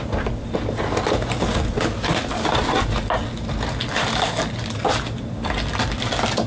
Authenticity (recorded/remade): recorded